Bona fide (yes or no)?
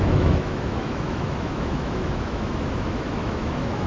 no